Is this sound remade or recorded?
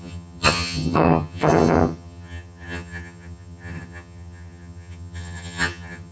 remade